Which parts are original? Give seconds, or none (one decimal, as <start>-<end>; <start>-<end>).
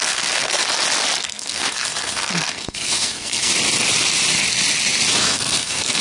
0.6-1.2; 3.5-5.2